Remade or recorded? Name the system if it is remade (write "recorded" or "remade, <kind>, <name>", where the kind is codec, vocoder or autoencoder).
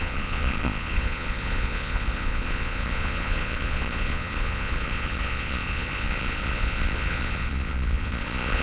remade, vocoder, Vocos